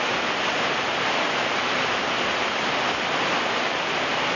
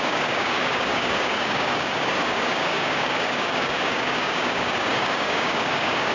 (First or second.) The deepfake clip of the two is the second